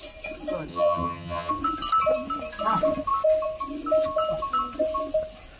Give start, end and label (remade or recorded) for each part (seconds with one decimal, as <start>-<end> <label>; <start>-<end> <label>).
0.0-0.7 recorded; 0.7-1.5 remade; 1.5-5.6 recorded